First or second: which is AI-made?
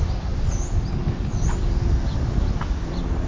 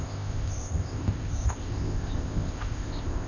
second